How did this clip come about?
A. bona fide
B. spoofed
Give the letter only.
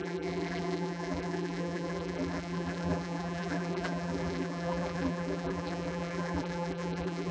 B